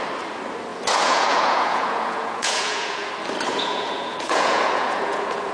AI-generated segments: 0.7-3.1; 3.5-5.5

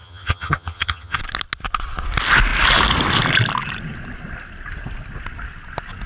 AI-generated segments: 0.0-1.2

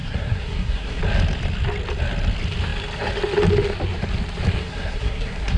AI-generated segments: 0.0-1.0; 4.6-5.6

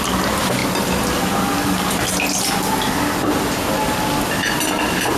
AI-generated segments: none